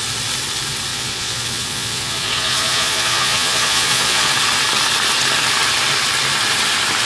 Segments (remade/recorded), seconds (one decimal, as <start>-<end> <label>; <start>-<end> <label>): 0.0-0.9 recorded; 0.9-4.3 remade; 4.3-7.1 recorded